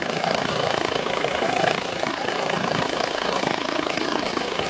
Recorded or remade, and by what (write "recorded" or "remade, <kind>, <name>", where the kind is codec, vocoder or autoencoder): remade, codec, SNAC